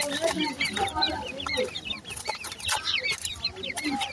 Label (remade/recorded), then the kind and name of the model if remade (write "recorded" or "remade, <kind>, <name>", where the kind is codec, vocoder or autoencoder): recorded